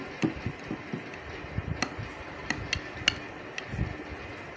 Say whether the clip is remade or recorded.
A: recorded